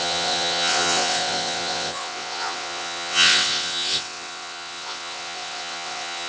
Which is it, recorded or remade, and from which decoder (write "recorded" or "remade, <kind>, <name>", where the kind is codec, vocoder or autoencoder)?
remade, vocoder, WaveNeXt